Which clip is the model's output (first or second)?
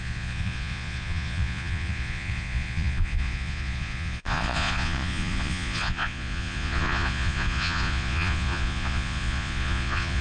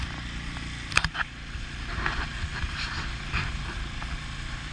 first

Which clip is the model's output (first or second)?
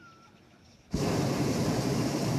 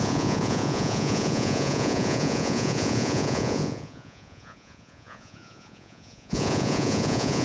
second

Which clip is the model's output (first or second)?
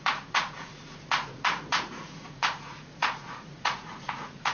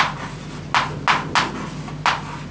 first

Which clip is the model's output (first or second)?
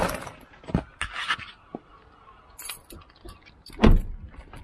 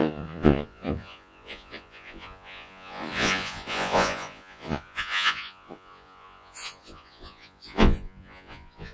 second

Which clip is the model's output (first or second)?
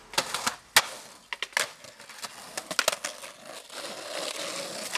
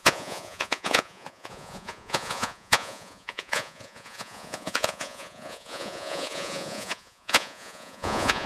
second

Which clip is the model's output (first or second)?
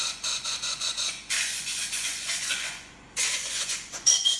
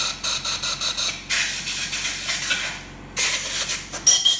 first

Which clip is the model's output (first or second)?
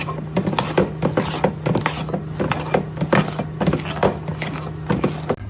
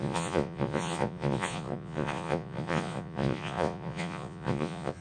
second